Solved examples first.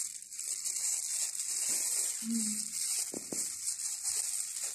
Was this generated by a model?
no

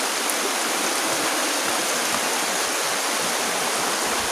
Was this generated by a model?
no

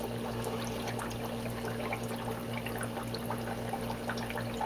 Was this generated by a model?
no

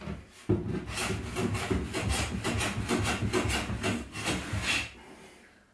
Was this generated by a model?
no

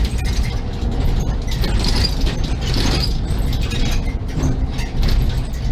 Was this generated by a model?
no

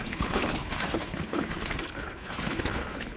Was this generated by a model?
yes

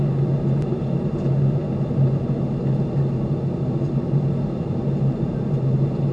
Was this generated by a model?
no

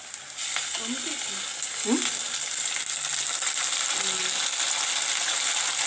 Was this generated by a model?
no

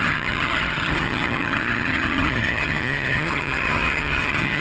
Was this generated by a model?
yes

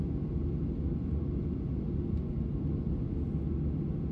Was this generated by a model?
no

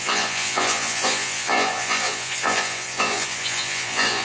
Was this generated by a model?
yes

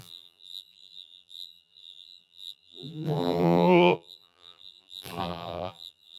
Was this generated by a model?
yes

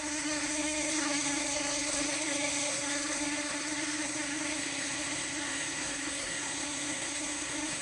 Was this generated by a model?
yes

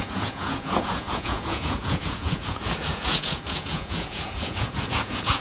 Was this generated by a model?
yes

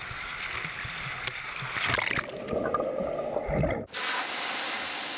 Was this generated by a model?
no